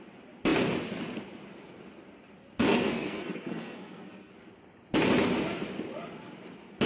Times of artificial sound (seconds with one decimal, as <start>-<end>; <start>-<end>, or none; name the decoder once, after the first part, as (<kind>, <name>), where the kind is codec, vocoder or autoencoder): 2.6-4.3 (codec, SNAC)